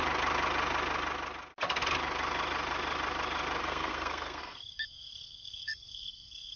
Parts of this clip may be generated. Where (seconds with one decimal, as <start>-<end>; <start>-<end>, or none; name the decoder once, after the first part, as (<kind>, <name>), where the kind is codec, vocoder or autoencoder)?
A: 3.6-6.6 (codec, SNAC)